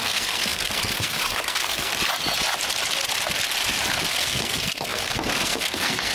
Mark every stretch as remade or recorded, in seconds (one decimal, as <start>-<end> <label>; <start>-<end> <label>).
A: 0.0-1.9 remade; 1.9-4.1 recorded; 4.1-6.1 remade

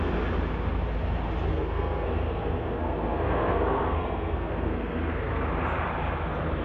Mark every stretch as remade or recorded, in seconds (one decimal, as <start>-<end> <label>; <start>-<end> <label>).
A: 0.0-1.5 recorded; 1.5-5.5 remade; 5.5-6.6 recorded

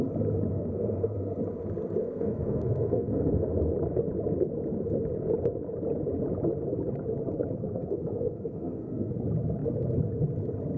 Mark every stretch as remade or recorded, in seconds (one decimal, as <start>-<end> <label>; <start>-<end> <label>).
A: 0.0-0.5 recorded; 0.5-1.4 remade; 1.4-2.0 recorded; 2.0-3.5 remade; 3.5-7.7 recorded; 7.7-9.1 remade; 9.1-10.8 recorded